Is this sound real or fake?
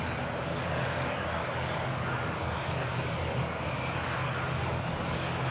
fake